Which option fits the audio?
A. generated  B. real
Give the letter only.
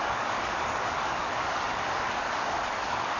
A